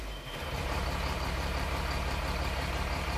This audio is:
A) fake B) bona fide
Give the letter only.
A